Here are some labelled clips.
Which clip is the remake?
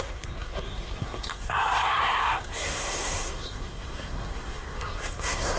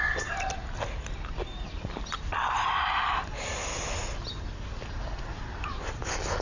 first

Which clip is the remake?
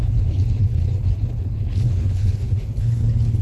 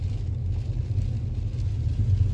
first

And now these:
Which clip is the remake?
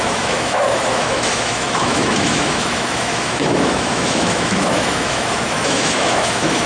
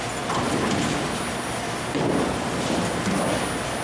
first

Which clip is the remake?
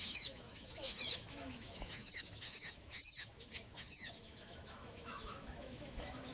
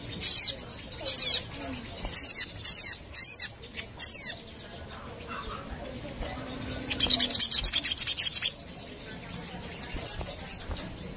first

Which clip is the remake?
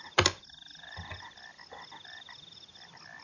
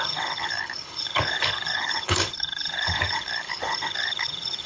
second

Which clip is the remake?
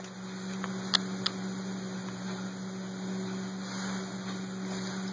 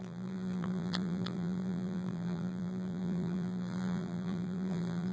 second